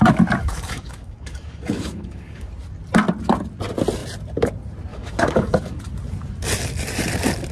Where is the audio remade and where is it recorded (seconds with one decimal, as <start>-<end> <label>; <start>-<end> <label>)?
0.0-0.4 recorded; 0.4-2.5 remade; 2.5-4.9 recorded; 4.9-5.8 remade; 5.8-7.5 recorded